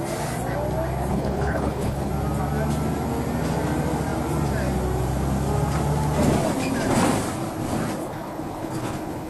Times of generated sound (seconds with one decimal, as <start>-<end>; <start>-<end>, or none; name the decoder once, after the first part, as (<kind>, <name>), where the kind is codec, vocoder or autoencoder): 1.1-2.1 (codec, HILCodec); 8.0-9.3